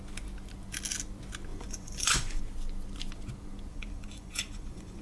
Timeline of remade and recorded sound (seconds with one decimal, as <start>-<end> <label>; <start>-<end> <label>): 0.0-1.5 recorded; 1.5-2.4 remade; 2.4-3.7 recorded; 3.7-5.0 remade

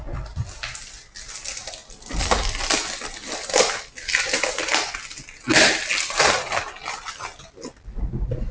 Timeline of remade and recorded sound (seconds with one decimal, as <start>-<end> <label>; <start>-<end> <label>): 0.0-8.5 recorded

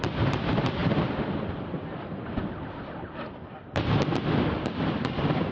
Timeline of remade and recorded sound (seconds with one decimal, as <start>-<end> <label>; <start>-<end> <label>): 0.0-0.8 recorded; 0.8-3.8 remade; 3.8-5.5 recorded

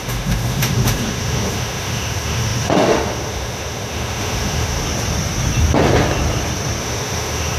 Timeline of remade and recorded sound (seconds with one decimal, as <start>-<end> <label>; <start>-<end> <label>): 0.0-4.8 remade; 4.8-6.8 recorded; 6.8-7.6 remade

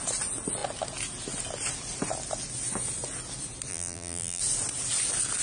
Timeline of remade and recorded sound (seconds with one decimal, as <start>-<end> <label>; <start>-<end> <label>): 0.0-3.7 recorded; 3.7-4.4 remade; 4.4-5.4 recorded